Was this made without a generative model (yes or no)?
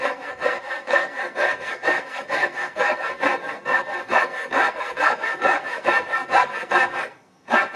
no